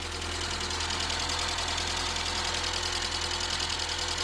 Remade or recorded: recorded